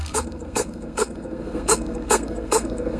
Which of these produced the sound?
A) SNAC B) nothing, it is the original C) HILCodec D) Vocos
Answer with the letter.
A